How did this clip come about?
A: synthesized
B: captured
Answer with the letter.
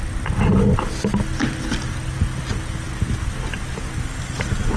B